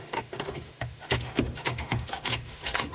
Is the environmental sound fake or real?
fake